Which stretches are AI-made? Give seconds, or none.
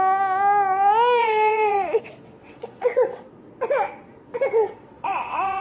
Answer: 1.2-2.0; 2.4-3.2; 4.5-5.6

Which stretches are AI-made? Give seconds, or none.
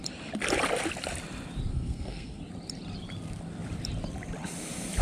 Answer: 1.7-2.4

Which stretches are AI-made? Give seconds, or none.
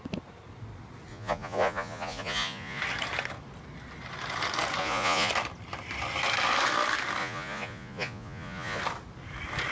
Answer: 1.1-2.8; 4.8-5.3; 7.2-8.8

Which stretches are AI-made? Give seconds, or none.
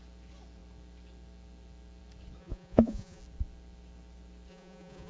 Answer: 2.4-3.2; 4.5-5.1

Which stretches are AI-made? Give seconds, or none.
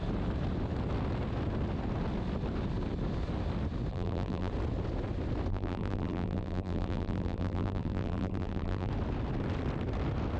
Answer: 3.9-4.5; 5.5-8.9